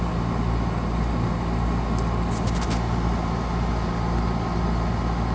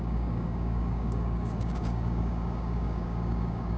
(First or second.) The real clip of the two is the first